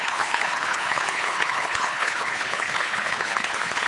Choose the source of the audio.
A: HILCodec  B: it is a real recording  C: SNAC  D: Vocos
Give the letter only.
A